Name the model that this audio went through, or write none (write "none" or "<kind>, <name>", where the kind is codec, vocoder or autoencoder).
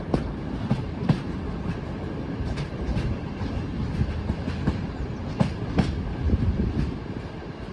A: none